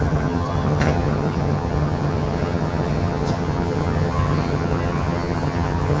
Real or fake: fake